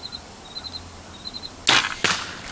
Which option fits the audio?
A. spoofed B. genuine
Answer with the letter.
B